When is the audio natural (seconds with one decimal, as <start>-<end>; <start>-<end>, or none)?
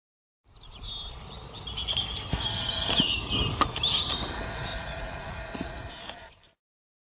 0.9-4.7; 5.9-7.1